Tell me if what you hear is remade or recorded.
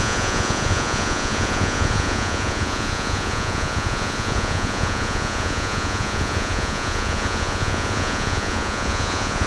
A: remade